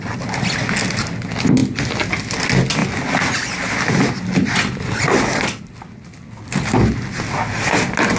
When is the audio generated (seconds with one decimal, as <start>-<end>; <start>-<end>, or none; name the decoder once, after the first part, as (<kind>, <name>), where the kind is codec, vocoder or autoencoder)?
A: none

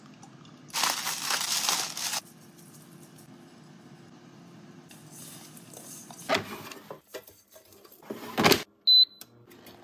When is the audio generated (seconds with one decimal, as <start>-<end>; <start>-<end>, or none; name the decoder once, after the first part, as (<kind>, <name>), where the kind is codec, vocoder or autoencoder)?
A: none

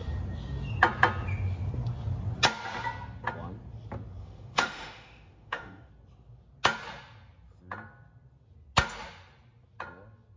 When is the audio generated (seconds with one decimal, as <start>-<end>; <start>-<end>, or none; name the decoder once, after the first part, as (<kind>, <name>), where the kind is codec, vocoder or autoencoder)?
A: 4.2-5.9 (autoencoder, DAC-VAE)

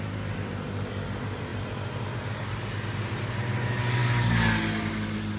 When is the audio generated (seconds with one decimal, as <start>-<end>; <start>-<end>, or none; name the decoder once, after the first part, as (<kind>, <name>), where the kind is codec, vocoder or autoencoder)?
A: none

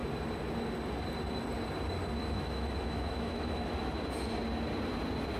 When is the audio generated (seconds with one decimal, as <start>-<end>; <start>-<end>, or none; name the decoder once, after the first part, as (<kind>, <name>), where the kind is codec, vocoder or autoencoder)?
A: 2.2-3.7 (autoencoder, DAC-VAE)

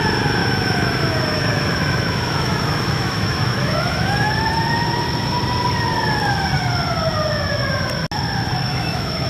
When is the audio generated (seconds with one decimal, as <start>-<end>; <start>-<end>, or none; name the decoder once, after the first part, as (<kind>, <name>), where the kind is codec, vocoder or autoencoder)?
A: 0.4-4.3 (autoencoder, DAC-VAE); 8.6-9.3

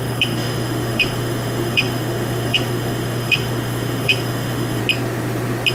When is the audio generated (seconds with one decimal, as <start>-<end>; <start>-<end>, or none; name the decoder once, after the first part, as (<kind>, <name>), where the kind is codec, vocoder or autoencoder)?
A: 0.0-4.8 (autoencoder, DAC-VAE)